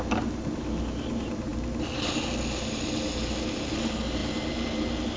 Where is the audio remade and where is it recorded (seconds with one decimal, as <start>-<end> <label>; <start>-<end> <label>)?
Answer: 0.0-5.2 recorded